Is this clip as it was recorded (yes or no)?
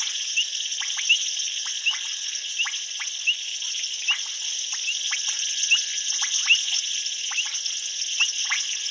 yes